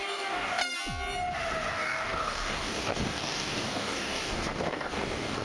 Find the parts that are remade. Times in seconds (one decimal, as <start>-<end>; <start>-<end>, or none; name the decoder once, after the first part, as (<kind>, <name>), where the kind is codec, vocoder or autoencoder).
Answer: 0.0-0.6 (codec, DAC); 1.7-5.4